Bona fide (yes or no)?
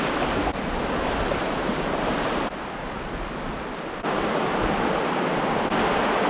yes